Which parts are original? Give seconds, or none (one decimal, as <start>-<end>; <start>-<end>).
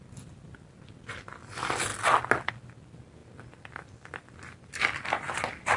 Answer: 0.0-5.8